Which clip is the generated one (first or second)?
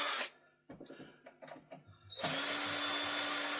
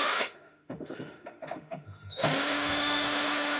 second